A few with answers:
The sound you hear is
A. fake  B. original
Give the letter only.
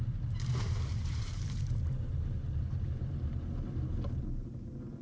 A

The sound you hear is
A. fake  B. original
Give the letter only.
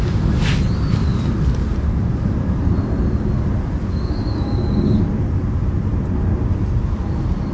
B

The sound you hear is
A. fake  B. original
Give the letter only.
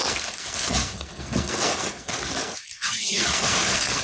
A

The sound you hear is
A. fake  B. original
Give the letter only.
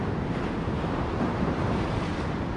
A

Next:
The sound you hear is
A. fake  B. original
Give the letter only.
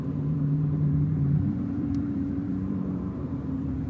A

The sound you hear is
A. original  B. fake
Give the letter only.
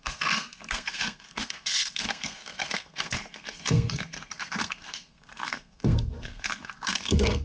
B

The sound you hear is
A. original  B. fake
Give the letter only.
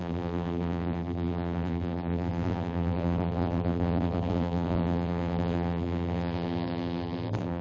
B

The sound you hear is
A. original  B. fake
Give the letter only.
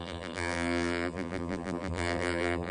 B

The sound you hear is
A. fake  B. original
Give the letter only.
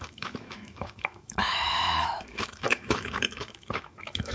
A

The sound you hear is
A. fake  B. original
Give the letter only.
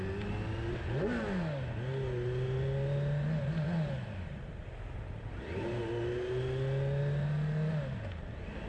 B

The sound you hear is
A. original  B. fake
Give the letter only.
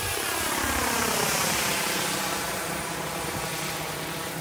B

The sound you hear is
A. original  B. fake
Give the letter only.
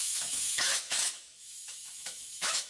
B